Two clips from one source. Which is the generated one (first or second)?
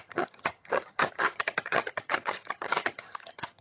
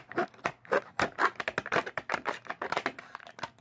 first